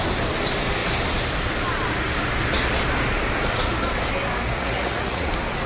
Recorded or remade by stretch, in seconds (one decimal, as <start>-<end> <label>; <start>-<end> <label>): 0.0-4.5 recorded; 4.5-5.3 remade; 5.3-5.7 recorded